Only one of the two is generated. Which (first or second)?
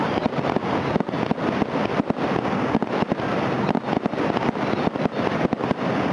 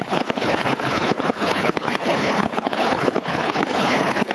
second